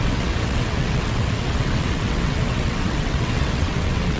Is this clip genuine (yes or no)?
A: no